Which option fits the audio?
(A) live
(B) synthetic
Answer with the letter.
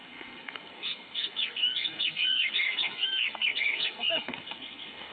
B